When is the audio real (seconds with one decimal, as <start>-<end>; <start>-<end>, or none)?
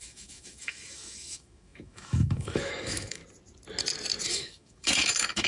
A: 3.2-4.3